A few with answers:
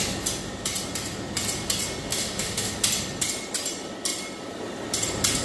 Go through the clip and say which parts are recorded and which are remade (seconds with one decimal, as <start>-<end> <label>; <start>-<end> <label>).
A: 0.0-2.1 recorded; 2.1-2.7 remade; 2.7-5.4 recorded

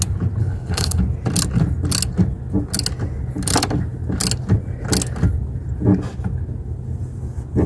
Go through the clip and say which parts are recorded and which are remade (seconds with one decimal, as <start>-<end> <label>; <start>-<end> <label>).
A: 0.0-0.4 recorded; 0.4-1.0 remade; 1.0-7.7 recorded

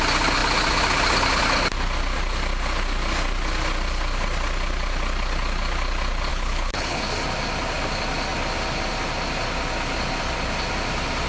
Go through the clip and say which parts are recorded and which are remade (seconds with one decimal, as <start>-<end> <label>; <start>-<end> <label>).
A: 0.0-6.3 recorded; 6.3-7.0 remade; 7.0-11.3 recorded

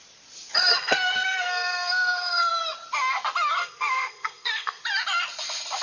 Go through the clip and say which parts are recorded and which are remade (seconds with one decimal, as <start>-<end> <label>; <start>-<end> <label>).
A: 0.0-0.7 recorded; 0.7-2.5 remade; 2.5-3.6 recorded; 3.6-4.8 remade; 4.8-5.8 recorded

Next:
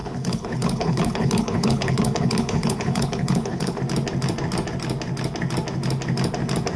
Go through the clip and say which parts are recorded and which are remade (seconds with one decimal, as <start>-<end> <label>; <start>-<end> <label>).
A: 0.0-3.8 remade; 3.8-6.8 recorded

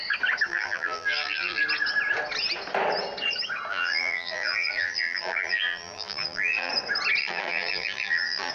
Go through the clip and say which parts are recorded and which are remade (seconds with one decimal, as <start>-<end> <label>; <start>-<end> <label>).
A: 0.0-0.5 recorded; 0.5-1.6 remade; 1.6-3.7 recorded; 3.7-6.7 remade; 6.7-7.2 recorded; 7.2-8.5 remade

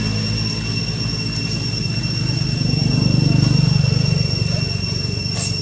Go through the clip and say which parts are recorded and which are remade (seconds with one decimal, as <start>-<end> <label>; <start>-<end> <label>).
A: 0.0-5.6 recorded